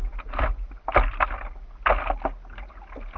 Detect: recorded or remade recorded